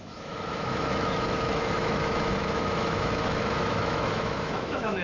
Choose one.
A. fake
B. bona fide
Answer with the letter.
A